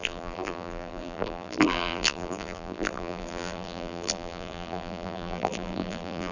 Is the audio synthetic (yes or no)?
yes